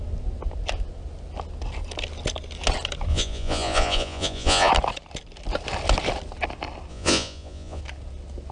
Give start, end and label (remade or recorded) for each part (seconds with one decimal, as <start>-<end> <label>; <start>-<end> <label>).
0.0-3.1 recorded; 3.1-4.7 remade; 4.7-6.9 recorded; 6.9-7.8 remade; 7.8-8.5 recorded